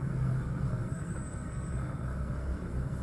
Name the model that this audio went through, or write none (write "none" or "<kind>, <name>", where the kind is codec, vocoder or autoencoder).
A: codec, SNAC